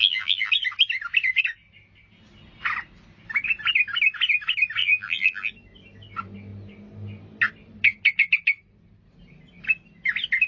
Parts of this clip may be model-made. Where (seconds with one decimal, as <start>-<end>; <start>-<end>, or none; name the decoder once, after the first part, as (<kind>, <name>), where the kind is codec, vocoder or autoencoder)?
0.0-0.5 (vocoder, BigVGAN v2); 4.8-5.5